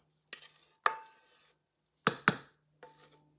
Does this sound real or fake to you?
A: real